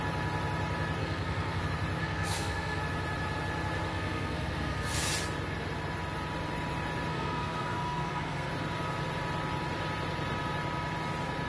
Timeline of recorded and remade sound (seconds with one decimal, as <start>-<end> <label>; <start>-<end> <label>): 0.0-1.0 recorded; 1.0-1.6 remade; 1.6-2.0 recorded; 2.0-2.8 remade; 2.8-3.9 recorded; 3.9-5.1 remade; 5.1-7.1 recorded; 7.1-8.5 remade; 8.5-11.5 recorded